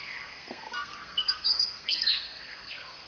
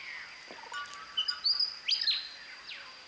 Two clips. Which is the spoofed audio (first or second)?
first